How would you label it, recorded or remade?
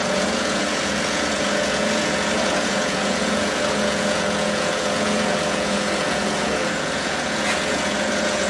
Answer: remade